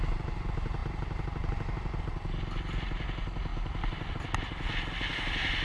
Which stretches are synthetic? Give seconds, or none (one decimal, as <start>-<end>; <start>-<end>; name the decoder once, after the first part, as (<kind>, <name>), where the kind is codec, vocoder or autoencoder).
none